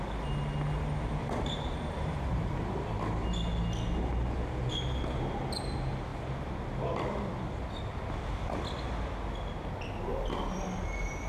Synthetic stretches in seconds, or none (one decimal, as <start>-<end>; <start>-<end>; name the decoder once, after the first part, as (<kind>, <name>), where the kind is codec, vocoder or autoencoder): 1.2-2.9 (vocoder, BigVGAN v2)